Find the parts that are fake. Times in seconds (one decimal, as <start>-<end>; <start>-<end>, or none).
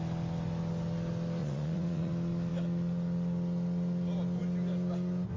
1.4-2.1